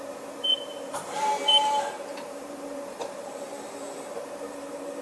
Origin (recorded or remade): remade